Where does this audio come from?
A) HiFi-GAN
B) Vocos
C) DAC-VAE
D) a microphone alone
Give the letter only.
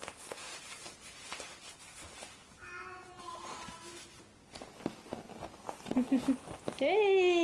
D